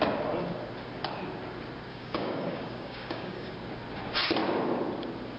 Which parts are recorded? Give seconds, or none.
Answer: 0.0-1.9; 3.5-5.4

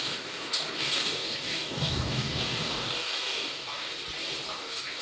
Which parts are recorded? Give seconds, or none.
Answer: 3.9-4.6

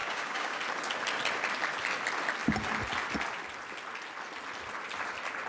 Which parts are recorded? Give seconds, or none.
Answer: 0.6-5.5

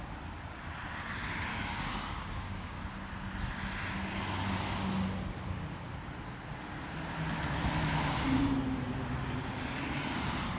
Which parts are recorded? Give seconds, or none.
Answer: 0.0-1.5; 2.8-10.6

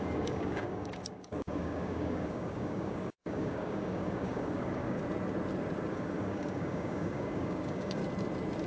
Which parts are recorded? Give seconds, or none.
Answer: 5.0-5.9; 8.0-8.7

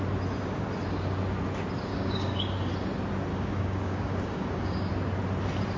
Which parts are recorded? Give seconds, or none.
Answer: 0.0-1.9; 2.7-3.3; 4.9-5.8